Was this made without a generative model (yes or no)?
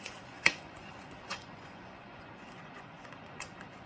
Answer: no